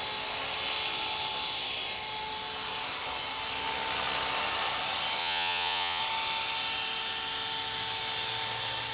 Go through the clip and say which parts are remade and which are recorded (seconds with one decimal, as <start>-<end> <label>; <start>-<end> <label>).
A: 0.0-5.2 recorded; 5.2-6.0 remade; 6.0-8.9 recorded